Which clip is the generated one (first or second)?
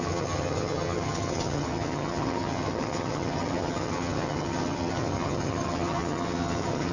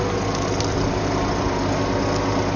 first